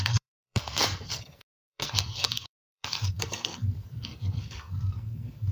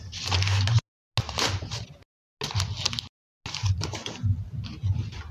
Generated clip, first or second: first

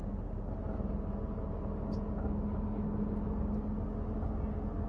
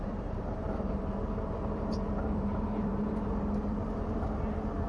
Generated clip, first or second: second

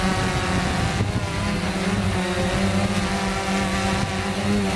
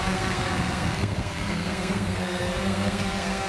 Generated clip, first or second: second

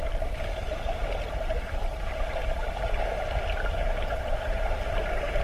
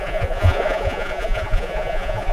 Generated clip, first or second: second